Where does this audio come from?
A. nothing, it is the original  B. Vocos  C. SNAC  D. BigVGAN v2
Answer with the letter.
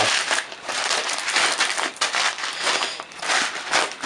A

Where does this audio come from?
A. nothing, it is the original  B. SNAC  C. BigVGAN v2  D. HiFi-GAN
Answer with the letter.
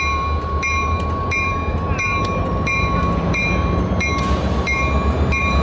C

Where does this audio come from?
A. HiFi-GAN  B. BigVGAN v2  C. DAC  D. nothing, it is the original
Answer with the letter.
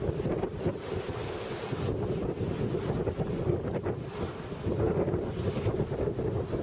D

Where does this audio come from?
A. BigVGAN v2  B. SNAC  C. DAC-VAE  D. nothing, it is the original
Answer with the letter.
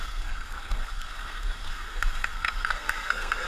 B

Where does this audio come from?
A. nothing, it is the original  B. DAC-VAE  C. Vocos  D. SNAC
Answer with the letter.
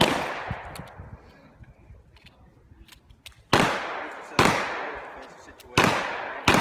A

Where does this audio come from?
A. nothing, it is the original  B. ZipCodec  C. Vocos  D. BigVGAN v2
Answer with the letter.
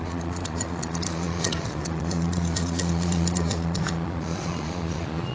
C